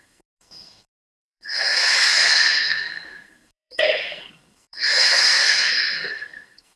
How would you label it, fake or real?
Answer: fake